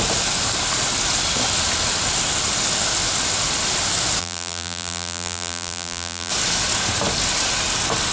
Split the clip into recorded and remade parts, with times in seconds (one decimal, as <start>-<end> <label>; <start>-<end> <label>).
0.0-4.2 recorded; 4.2-6.3 remade; 6.3-8.1 recorded